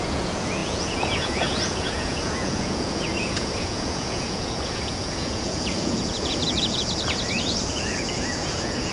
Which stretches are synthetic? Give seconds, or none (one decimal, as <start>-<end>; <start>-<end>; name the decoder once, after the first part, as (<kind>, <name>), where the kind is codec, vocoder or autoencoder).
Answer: 0.0-8.9 (vocoder, Vocos)